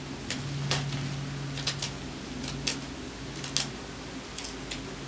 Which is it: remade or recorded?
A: recorded